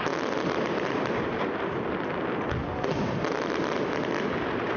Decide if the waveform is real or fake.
real